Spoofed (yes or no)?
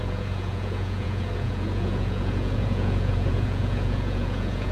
yes